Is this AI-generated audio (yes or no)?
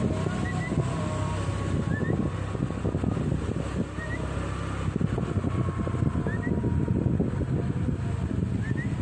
no